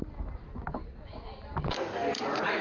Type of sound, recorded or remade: recorded